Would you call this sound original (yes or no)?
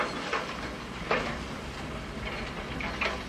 yes